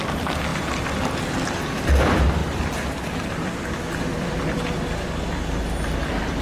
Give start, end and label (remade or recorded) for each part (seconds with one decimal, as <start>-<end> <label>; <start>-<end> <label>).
0.0-0.5 recorded; 0.5-1.2 remade; 1.2-2.4 recorded; 2.4-3.5 remade; 3.5-4.1 recorded; 4.1-4.6 remade; 4.6-6.4 recorded